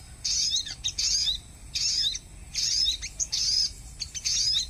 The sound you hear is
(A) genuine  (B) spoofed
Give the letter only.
A